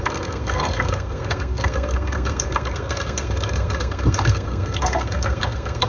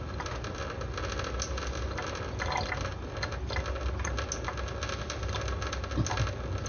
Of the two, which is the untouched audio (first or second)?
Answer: second